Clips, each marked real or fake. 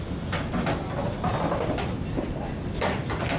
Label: real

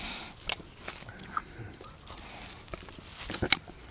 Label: real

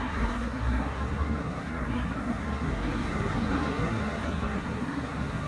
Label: fake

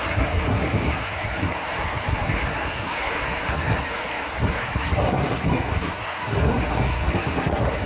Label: fake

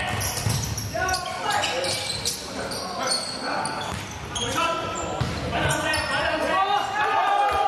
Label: real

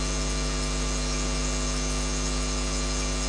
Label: real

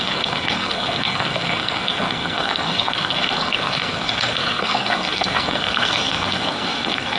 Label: fake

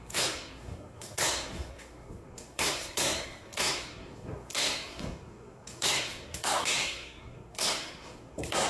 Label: fake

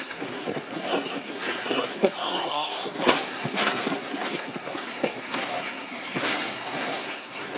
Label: fake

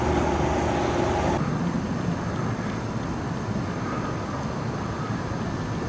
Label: real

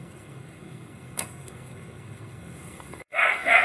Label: fake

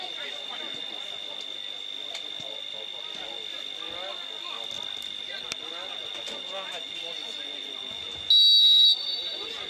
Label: real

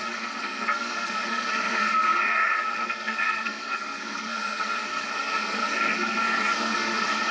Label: fake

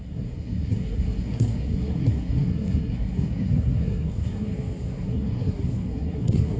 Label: fake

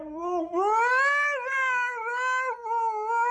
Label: real